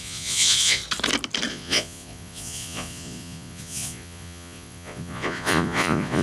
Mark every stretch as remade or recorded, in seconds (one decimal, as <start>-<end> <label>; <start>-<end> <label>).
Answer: 0.0-0.8 remade; 0.8-1.5 recorded; 1.5-6.2 remade